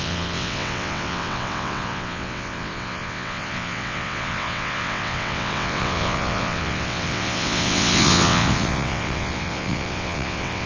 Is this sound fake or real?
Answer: fake